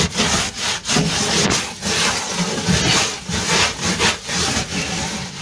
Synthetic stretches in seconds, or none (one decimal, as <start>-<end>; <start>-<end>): none